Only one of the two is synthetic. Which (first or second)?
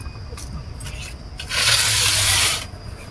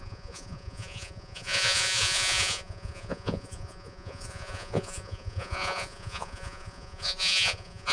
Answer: second